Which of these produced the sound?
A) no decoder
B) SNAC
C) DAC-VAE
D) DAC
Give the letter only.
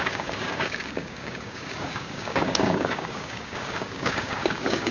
D